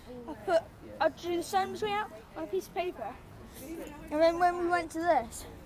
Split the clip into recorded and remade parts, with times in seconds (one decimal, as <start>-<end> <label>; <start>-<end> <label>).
0.0-0.4 recorded; 0.4-1.8 remade; 1.8-2.7 recorded; 2.7-3.6 remade; 3.6-5.7 recorded